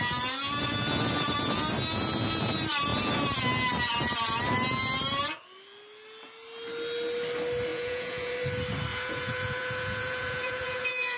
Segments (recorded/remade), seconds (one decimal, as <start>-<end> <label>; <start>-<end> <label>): 0.0-7.7 recorded; 7.7-8.3 remade; 8.3-8.9 recorded; 8.9-11.2 remade